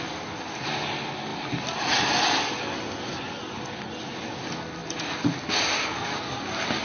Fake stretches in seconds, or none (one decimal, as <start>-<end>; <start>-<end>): none